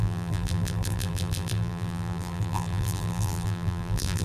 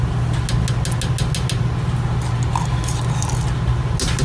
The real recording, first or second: second